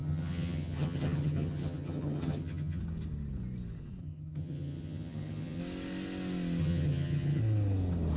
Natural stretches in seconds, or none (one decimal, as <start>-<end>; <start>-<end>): 2.8-4.0; 5.6-6.6; 7.4-8.2